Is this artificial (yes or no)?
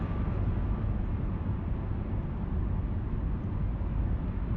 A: no